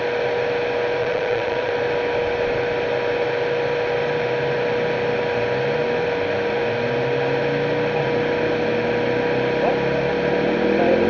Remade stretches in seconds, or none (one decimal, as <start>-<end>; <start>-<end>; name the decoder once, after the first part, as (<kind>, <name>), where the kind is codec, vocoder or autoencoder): 1.0-1.7 (vocoder, Vocos)